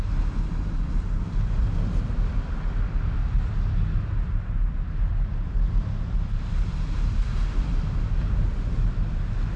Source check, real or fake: real